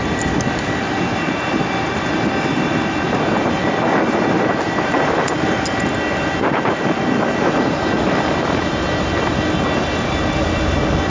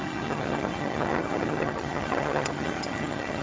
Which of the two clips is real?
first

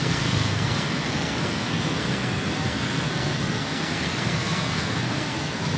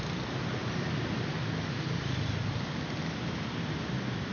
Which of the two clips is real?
second